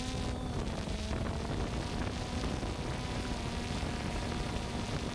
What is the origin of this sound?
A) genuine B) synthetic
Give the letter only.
A